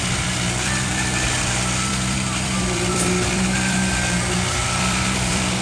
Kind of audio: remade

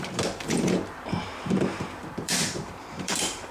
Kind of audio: remade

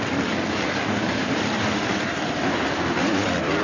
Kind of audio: remade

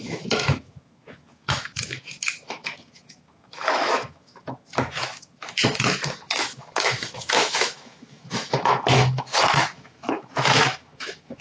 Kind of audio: remade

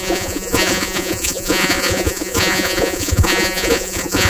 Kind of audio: remade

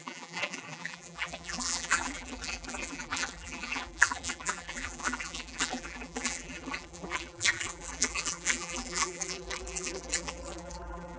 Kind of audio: remade